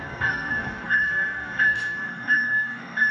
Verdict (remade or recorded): remade